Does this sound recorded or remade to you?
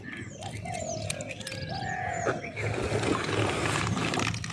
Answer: recorded